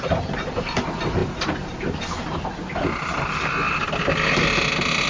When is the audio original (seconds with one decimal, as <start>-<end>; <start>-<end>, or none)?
0.0-5.1